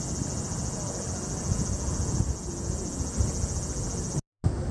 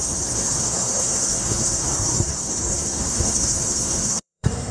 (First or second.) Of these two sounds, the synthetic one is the second